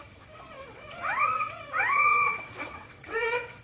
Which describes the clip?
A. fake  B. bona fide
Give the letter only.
A